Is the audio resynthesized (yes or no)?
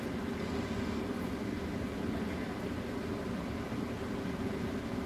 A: no